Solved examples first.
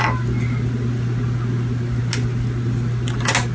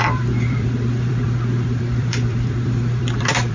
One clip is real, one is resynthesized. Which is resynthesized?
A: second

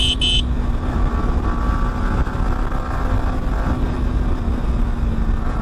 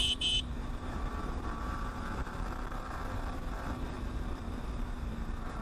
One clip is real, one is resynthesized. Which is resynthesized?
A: second